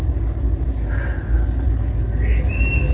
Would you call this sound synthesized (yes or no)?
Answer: no